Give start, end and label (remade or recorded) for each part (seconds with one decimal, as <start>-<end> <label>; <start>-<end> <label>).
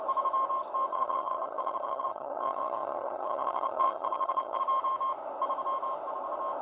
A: 0.0-0.9 recorded; 0.9-4.6 remade; 4.6-6.6 recorded